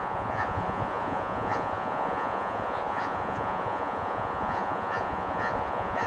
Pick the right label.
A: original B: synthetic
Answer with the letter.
B